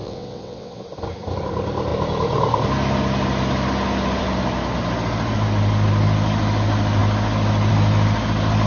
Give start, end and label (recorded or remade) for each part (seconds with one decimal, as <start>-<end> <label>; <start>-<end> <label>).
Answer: 0.0-0.8 remade; 0.8-8.7 recorded